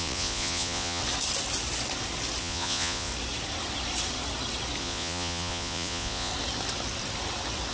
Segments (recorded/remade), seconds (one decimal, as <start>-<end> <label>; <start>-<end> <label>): 0.0-1.0 remade; 1.0-2.4 recorded; 2.4-3.1 remade; 3.1-4.8 recorded; 4.8-6.3 remade; 6.3-7.7 recorded